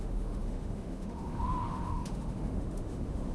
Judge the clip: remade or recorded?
remade